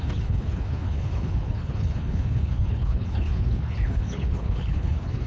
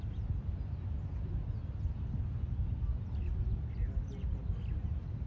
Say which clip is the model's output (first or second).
first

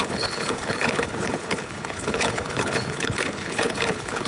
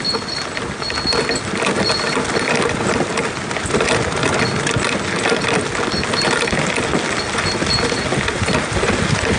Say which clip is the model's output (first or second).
first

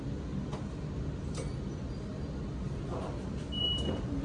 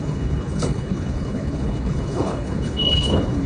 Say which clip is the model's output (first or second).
second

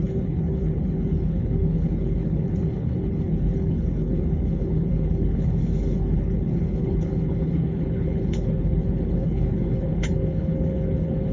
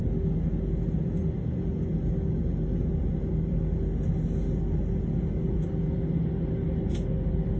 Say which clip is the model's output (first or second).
first